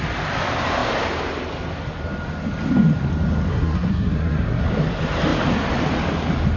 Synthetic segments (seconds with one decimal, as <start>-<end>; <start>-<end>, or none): 3.5-4.6